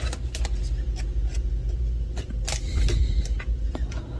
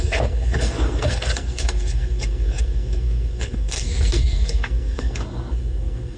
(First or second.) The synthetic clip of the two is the second